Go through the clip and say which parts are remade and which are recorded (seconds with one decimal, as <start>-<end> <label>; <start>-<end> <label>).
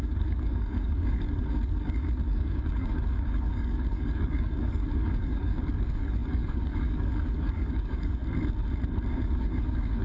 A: 0.0-8.2 remade; 8.2-9.1 recorded; 9.1-10.0 remade